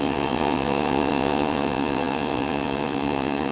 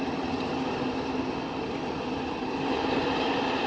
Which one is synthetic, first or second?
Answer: first